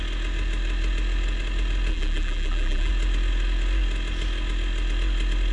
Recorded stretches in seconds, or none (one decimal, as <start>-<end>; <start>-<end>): 0.0-1.9; 2.9-5.5